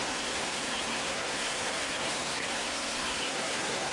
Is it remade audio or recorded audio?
remade